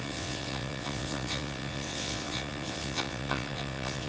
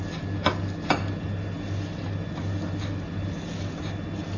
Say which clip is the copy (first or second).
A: first